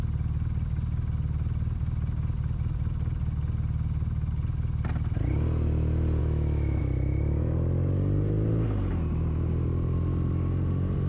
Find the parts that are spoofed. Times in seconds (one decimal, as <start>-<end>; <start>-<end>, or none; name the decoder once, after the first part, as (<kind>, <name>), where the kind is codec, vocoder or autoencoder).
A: 6.2-6.8 (autoencoder, DAC-VAE)